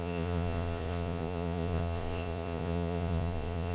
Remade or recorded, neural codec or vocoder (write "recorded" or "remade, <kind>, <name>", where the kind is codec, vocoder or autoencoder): remade, vocoder, Vocos